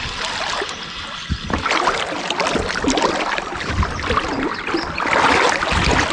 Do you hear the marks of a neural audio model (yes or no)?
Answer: no